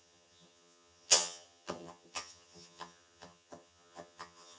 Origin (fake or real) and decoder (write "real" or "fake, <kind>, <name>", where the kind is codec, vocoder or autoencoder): fake, vocoder, HiFi-GAN